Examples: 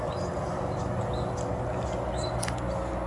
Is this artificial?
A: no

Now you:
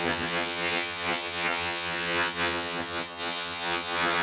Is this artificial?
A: yes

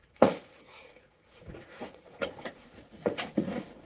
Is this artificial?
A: yes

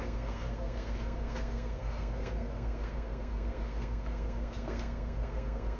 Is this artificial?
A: yes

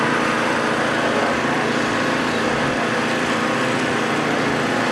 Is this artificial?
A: no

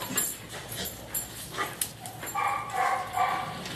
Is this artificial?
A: no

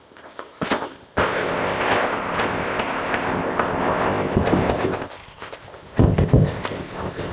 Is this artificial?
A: yes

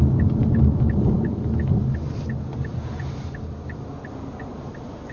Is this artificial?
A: no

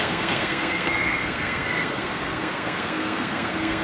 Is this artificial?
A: yes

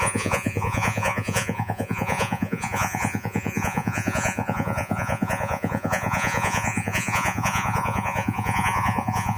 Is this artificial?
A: yes